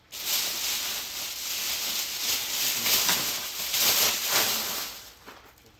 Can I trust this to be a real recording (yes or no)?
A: yes